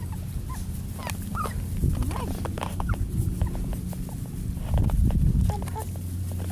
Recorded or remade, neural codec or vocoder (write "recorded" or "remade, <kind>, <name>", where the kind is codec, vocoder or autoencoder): recorded